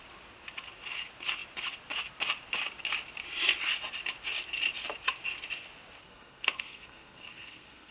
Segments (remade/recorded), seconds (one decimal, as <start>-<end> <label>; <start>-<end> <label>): 0.0-6.0 recorded; 6.0-7.9 remade